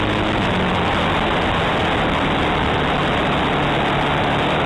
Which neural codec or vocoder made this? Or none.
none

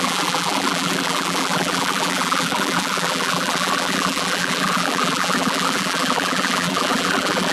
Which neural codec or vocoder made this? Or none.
vocoder, BigVGAN v2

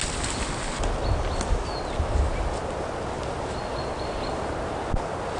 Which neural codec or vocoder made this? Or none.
none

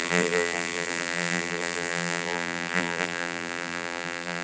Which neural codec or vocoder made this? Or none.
vocoder, BigVGAN v2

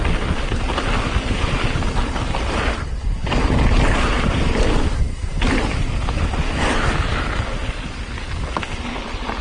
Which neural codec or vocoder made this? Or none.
none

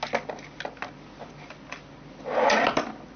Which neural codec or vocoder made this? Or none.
none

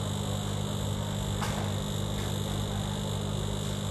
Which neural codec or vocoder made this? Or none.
none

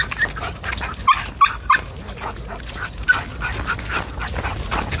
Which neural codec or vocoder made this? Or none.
none